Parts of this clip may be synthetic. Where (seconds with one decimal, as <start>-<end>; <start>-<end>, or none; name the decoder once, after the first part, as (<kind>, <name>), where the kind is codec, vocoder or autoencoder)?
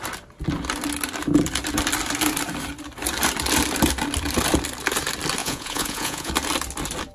5.4-6.3 (vocoder, Vocos)